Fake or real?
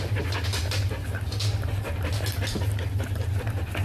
real